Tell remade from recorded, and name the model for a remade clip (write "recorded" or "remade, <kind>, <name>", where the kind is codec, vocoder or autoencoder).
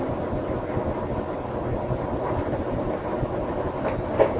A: recorded